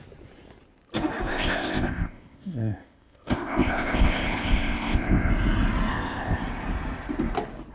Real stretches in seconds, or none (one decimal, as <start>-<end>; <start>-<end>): 0.0-1.3; 5.3-5.9; 6.4-7.7